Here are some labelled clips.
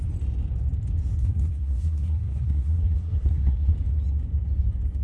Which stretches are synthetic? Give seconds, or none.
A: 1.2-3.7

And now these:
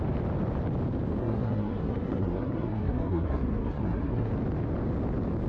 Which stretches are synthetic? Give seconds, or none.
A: 1.2-4.3

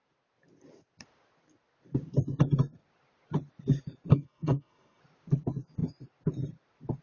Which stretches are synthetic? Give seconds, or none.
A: 4.1-5.0

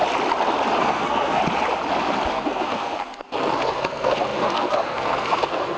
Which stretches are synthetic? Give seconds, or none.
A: 0.8-1.4; 2.3-5.8

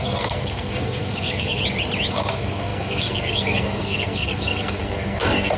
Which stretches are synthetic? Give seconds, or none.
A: 0.0-1.6; 2.1-5.6

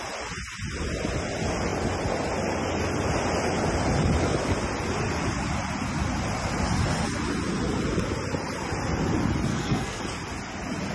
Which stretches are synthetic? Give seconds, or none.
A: 9.5-10.0